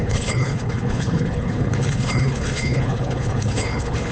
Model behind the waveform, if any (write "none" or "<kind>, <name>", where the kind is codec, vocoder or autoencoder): codec, HILCodec